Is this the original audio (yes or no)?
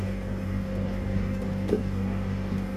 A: no